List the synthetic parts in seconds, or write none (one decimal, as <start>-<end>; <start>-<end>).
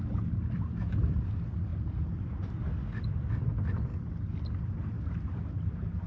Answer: none